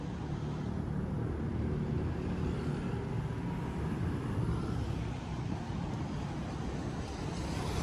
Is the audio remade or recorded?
recorded